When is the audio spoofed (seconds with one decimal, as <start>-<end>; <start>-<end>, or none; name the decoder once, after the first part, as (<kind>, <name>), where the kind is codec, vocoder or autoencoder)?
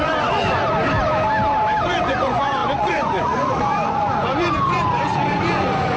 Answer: 0.0-0.6 (vocoder, Vocos); 1.8-6.0